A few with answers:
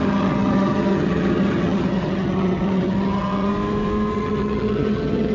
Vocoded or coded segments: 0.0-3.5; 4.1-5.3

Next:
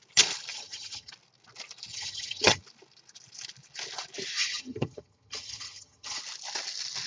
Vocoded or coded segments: 0.5-1.1; 1.9-2.6; 4.4-6.2

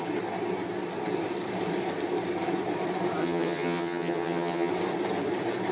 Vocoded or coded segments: 3.2-4.7

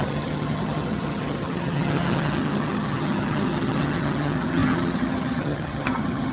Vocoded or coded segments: 0.0-6.3

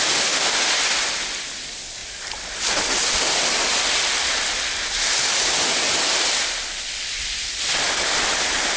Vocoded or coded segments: none

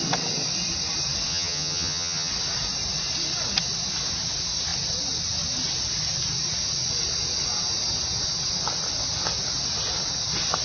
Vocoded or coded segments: 1.3-2.3